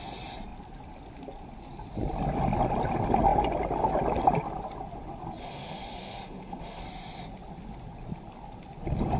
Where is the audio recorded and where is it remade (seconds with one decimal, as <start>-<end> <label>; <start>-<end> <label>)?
0.0-5.4 recorded; 5.4-6.8 remade; 6.8-9.2 recorded